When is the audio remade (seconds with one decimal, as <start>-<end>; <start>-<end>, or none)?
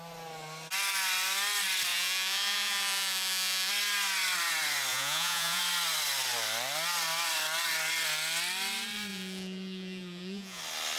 1.9-3.7; 4.9-5.6; 9.1-10.6